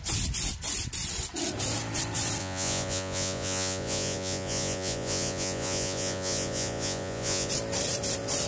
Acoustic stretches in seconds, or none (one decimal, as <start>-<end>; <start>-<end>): 0.0-2.4; 7.5-8.5